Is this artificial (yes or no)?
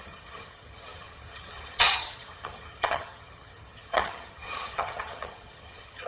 yes